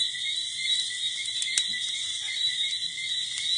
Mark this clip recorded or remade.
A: recorded